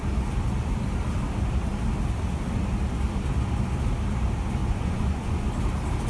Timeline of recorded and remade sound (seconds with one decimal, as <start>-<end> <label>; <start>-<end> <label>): 0.0-4.6 recorded; 4.6-5.5 remade; 5.5-6.1 recorded